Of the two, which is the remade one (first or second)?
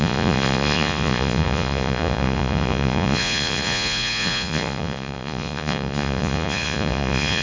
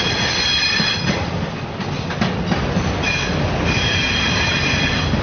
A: first